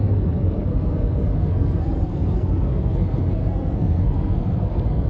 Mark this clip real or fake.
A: fake